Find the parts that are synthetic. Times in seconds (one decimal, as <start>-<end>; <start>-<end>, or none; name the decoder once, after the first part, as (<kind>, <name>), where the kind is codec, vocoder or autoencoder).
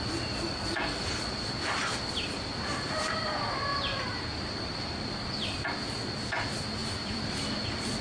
3.7-5.3 (vocoder, BigVGAN v2); 6.8-8.0